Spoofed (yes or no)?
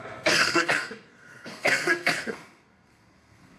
yes